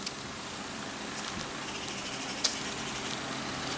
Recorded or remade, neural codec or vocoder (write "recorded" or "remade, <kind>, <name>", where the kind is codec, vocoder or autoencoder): recorded